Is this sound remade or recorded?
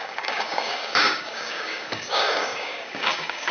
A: remade